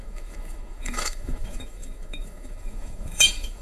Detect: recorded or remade remade